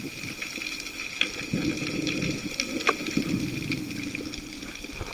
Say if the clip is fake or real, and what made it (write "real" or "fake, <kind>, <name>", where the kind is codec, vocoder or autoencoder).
real